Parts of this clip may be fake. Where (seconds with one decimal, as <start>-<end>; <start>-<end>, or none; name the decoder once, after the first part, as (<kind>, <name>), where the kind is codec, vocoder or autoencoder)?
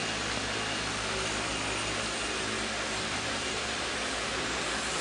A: 3.0-5.0 (vocoder, BigVGAN v2)